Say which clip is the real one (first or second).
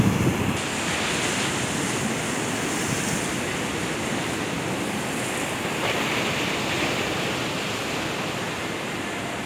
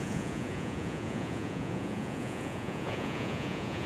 first